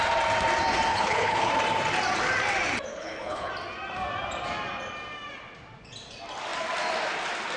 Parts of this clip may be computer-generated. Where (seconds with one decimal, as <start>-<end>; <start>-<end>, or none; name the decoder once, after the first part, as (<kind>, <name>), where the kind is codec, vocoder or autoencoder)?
0.9-1.5 (codec, HILCodec); 2.9-3.5